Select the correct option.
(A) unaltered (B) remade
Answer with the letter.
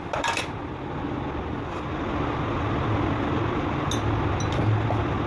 A